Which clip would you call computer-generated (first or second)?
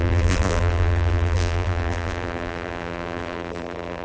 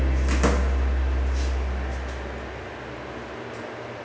first